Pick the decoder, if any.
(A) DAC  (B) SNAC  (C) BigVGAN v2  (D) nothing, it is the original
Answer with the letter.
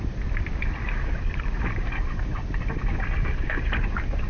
D